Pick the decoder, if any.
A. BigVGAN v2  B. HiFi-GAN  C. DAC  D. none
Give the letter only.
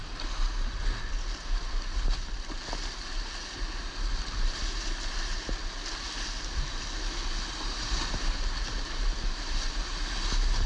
D